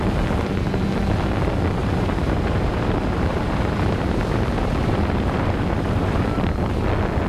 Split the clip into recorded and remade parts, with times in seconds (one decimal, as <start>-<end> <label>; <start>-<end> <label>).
0.0-1.8 recorded; 1.8-6.2 remade; 6.2-7.3 recorded